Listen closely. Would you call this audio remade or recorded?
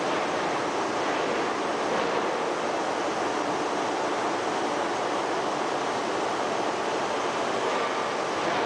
recorded